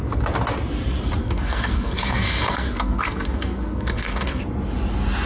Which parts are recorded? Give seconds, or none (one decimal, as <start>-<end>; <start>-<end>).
0.0-1.2; 4.4-5.3